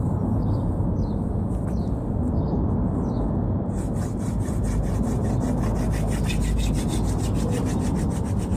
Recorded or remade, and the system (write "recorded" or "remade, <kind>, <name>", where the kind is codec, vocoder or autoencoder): recorded